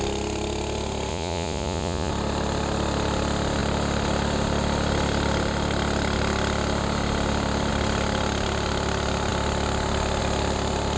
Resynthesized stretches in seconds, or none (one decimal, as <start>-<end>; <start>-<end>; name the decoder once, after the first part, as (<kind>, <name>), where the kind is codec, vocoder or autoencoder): 1.1-2.1 (vocoder, Vocos)